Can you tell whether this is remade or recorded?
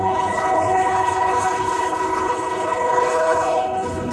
remade